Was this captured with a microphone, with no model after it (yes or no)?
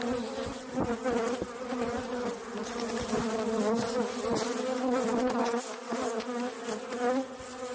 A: yes